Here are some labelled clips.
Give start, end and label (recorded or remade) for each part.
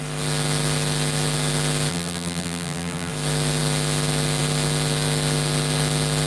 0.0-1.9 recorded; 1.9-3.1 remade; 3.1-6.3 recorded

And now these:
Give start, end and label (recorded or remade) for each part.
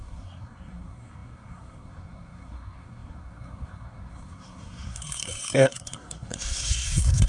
0.0-7.3 remade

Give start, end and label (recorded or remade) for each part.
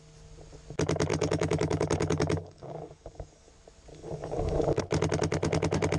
0.0-1.1 recorded; 1.1-3.5 remade; 3.5-3.9 recorded; 3.9-4.8 remade; 4.8-6.0 recorded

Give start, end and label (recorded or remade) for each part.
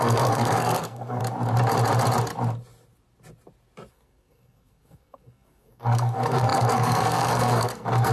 0.0-1.2 remade; 1.2-3.9 recorded; 3.9-8.1 remade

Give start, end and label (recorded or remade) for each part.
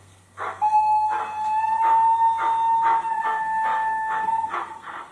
0.0-1.2 remade; 1.2-3.2 recorded; 3.2-5.1 remade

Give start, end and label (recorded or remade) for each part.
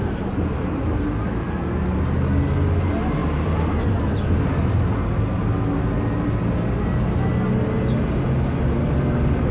0.0-9.5 recorded